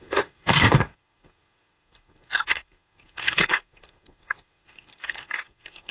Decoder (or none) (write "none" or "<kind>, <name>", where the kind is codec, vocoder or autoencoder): codec, SNAC